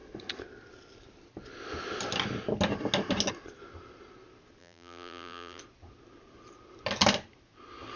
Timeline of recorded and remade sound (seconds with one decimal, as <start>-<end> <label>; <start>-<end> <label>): 0.0-4.6 recorded; 4.6-5.6 remade; 5.6-8.0 recorded